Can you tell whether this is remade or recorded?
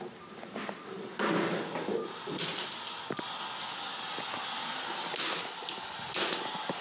recorded